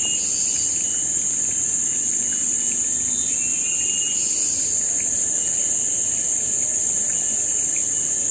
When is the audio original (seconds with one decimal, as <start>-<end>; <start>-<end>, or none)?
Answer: 0.0-8.3